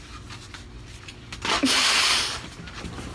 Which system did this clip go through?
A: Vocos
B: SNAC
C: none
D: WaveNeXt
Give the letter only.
C